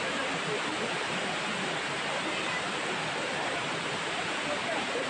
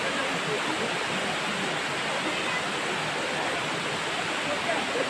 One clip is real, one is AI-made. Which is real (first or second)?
second